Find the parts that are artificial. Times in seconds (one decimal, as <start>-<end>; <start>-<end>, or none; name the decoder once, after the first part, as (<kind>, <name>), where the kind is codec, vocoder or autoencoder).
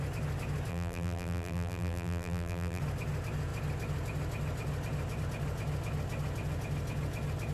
0.7-2.8 (vocoder, BigVGAN v2)